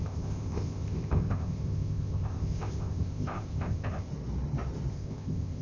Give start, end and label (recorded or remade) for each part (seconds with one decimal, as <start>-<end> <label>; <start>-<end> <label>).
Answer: 0.0-4.1 remade; 4.1-4.9 recorded; 4.9-5.6 remade